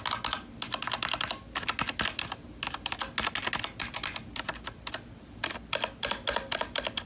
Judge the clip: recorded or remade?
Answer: recorded